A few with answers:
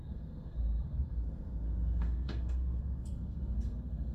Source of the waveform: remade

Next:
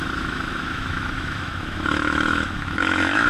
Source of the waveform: remade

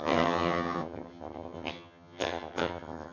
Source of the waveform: remade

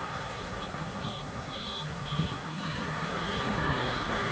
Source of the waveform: remade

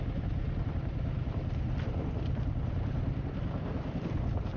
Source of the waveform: remade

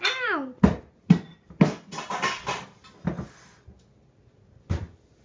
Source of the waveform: recorded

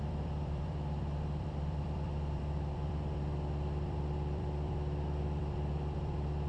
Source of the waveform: remade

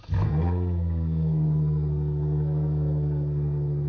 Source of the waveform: remade